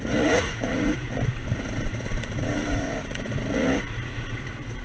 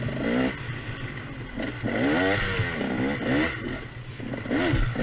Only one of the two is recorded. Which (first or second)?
second